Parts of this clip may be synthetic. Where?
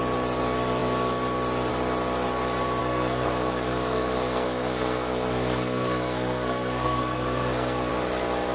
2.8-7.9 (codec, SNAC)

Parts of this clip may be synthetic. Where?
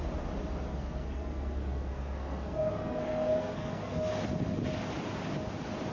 0.7-4.1 (codec, SNAC)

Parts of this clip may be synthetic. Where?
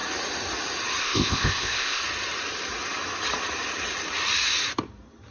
1.0-2.0 (codec, ZipCodec)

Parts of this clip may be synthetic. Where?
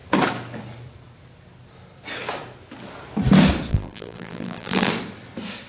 3.7-4.9 (vocoder, BigVGAN v2)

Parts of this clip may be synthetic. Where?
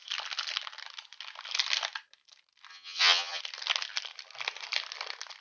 2.7-3.4 (vocoder, HiFi-GAN)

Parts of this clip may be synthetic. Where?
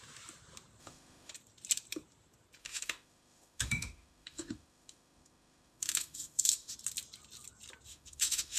0.8-1.3 (autoencoder, DAC-VAE); 2.6-6.7; 7.9-8.6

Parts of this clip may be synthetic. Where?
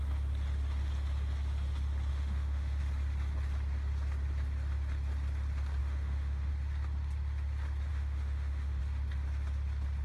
2.1-2.8 (autoencoder, DAC-VAE); 5.8-6.5; 7.9-8.8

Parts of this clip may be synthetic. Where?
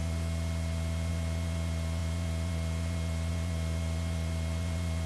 none